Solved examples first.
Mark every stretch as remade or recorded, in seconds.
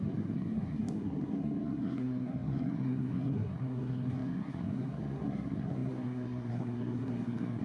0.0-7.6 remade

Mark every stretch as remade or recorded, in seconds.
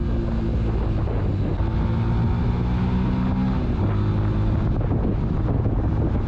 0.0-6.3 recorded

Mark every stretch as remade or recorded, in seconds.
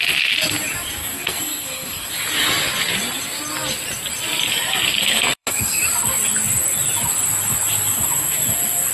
0.0-1.0 recorded; 1.0-2.1 remade; 2.1-5.0 recorded; 5.0-5.8 remade; 5.8-8.9 recorded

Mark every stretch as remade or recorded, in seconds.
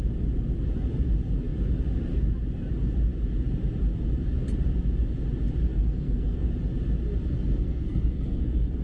0.0-5.7 recorded; 5.7-6.5 remade; 6.5-7.6 recorded; 7.6-8.8 remade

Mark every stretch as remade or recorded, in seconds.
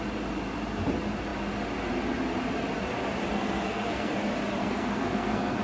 0.0-3.3 recorded; 3.3-4.1 remade; 4.1-4.6 recorded; 4.6-5.6 remade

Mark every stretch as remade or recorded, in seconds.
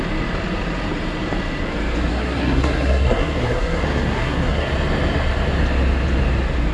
0.0-2.1 recorded; 2.1-4.7 remade; 4.7-6.7 recorded